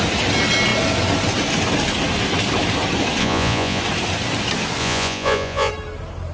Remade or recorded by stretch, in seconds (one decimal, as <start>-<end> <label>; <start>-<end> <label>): 0.0-3.2 recorded; 3.2-3.8 remade; 3.8-4.8 recorded; 4.8-5.7 remade; 5.7-6.3 recorded